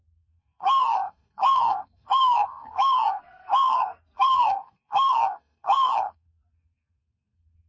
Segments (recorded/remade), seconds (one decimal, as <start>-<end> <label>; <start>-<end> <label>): 0.0-7.7 remade

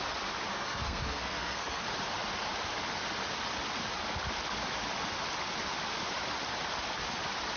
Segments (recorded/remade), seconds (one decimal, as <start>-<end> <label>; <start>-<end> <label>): 0.0-0.5 recorded; 0.5-1.8 remade; 1.8-7.6 recorded

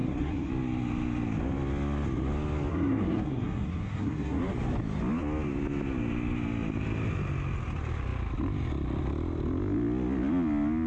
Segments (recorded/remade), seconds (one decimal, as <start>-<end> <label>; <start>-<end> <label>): 0.0-0.5 remade; 0.5-2.7 recorded; 2.7-4.4 remade; 4.4-10.9 recorded

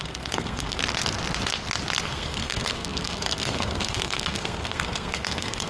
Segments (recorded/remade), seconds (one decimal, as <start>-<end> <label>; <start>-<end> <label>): 0.0-0.8 remade; 0.8-2.0 recorded; 2.0-5.7 remade

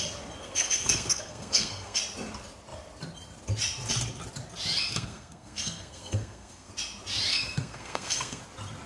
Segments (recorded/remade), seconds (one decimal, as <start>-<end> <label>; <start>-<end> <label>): 0.0-0.4 recorded; 0.4-2.0 remade; 2.0-4.9 recorded; 4.9-6.7 remade; 6.7-7.3 recorded; 7.3-8.4 remade; 8.4-8.9 recorded

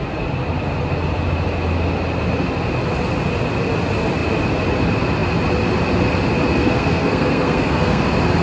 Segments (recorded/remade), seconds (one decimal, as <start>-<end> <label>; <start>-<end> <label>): 0.0-6.6 recorded; 6.6-8.0 remade; 8.0-8.4 recorded